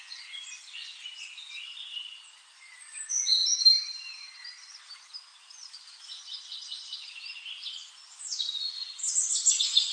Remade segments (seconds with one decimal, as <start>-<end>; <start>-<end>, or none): 0.0-1.0; 1.6-3.4; 7.9-9.9